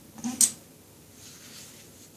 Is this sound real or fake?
real